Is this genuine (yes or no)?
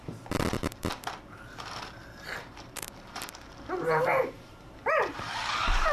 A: no